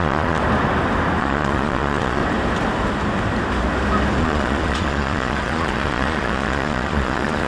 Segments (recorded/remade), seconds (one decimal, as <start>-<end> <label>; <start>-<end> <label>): 0.0-0.4 remade; 0.4-1.2 recorded; 1.2-2.2 remade; 2.2-4.2 recorded; 4.2-7.5 remade